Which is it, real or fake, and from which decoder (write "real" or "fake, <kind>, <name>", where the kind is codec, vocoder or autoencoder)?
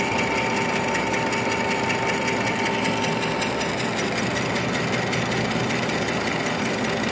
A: real